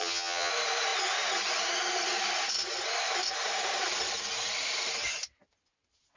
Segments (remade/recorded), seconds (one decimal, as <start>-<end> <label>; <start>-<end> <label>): 0.0-0.5 remade; 0.5-6.2 recorded